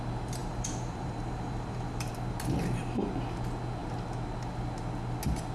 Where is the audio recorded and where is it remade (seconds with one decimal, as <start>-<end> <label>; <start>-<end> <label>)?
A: 0.0-0.4 recorded; 0.4-2.1 remade; 2.1-5.5 recorded